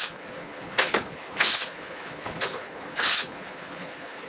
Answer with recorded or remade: remade